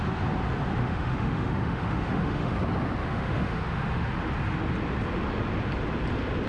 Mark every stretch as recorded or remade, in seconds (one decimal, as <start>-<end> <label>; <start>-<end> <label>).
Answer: 0.0-0.8 recorded; 0.8-2.5 remade; 2.5-3.0 recorded; 3.0-4.1 remade; 4.1-6.5 recorded